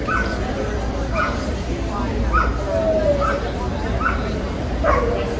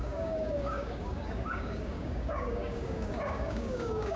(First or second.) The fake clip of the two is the second